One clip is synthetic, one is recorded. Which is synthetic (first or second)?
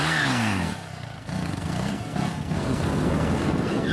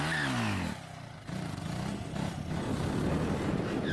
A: first